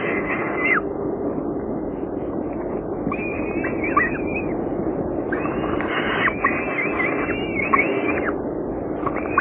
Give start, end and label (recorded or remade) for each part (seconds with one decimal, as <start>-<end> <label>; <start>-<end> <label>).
0.0-9.4 recorded